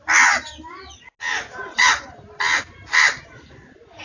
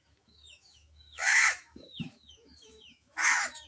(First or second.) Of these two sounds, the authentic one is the first